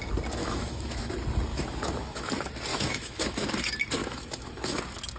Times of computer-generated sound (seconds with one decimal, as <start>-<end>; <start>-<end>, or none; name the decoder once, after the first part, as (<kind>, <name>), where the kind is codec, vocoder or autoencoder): 0.4-1.1 (autoencoder, DAC-VAE); 1.5-2.3; 2.7-3.5; 4.0-4.8